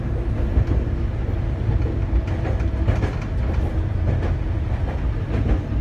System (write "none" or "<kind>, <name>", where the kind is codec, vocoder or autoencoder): none